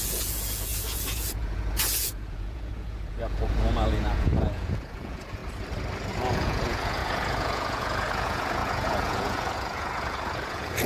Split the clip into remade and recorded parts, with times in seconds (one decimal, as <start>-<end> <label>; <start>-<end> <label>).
0.0-5.4 remade; 5.4-6.1 recorded; 6.1-10.9 remade